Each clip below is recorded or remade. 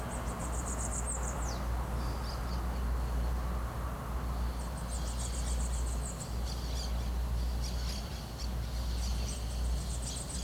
recorded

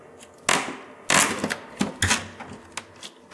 recorded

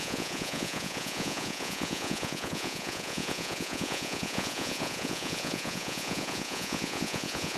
remade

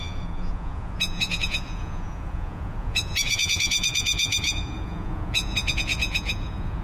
remade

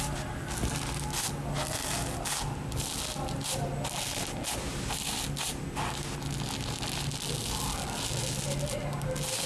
recorded